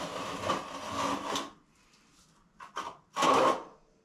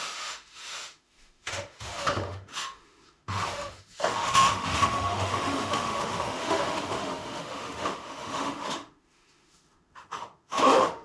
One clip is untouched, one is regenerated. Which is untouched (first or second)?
first